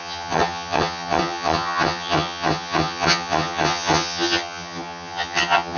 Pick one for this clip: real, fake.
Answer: fake